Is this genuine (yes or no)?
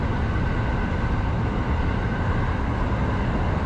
yes